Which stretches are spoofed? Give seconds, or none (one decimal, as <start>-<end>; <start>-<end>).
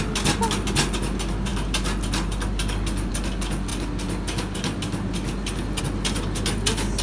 none